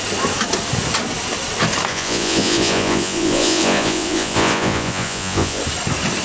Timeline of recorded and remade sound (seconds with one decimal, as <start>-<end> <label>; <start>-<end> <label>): 0.0-1.9 recorded; 1.9-5.6 remade; 5.6-6.2 recorded